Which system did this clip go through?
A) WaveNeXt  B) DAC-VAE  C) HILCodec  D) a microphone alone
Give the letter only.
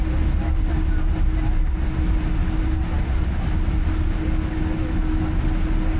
D